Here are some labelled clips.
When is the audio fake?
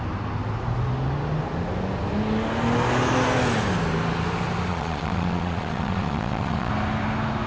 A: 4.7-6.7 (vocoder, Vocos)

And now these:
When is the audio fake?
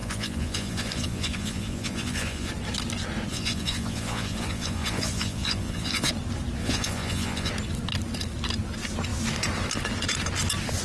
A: 0.0-2.5 (vocoder, Vocos); 3.3-6.1; 6.6-7.5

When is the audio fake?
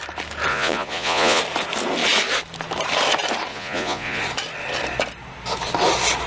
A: 0.5-1.4 (vocoder, Vocos); 3.5-4.2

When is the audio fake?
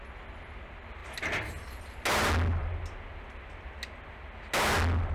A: none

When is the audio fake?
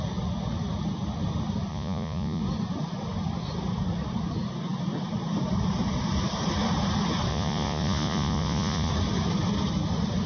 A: 1.7-2.4 (vocoder, Vocos); 7.3-8.9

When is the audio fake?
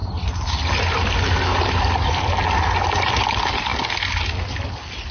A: none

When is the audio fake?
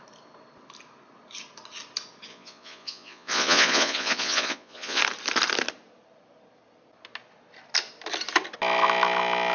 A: 2.3-5.0 (vocoder, Vocos)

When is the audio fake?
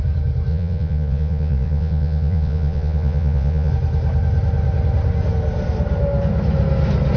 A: 0.5-3.7 (vocoder, Vocos)